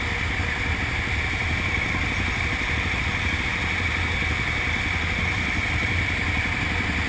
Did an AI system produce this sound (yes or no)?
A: no